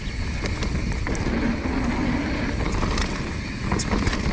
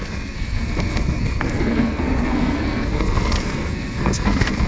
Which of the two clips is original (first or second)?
first